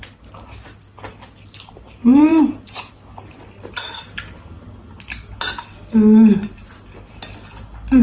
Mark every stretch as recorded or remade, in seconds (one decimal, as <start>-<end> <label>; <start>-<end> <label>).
0.0-2.0 recorded; 2.0-2.9 remade; 2.9-8.0 recorded